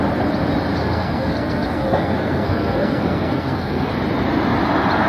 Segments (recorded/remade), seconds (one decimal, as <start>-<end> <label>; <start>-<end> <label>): 0.0-0.8 recorded; 0.8-3.9 remade; 3.9-5.1 recorded